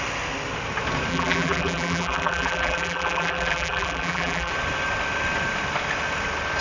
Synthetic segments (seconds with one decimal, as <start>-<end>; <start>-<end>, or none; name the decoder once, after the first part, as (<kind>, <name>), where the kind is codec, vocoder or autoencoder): 1.1-4.5 (vocoder, BigVGAN v2)

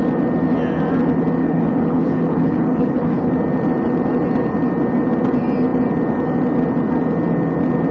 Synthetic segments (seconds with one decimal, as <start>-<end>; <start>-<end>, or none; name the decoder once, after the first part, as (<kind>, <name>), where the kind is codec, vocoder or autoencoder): 1.4-3.3 (codec, HILCodec)

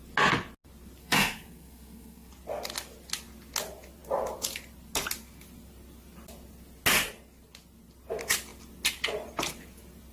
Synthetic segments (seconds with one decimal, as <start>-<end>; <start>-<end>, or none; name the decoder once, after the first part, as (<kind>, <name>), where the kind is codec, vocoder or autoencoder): 1.0-2.3 (codec, SNAC)

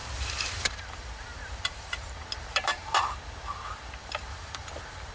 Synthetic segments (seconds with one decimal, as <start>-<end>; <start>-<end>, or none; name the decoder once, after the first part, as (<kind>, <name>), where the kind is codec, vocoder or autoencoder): 0.0-3.1 (vocoder, BigVGAN v2); 4.0-5.1